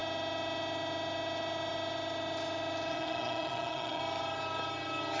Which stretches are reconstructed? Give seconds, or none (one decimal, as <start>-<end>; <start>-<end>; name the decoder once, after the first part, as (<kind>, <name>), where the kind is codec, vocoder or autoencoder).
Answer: 2.9-4.0 (vocoder, HiFi-GAN)